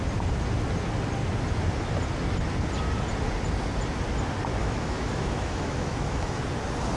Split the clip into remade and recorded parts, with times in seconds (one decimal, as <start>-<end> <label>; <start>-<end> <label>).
0.0-4.6 recorded; 4.6-6.4 remade; 6.4-7.0 recorded